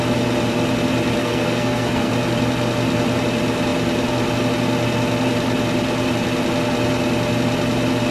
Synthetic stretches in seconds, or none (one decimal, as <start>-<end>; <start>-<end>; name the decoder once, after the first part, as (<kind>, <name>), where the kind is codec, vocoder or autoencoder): 1.2-2.1 (codec, SNAC)